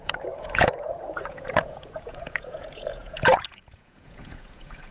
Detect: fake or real fake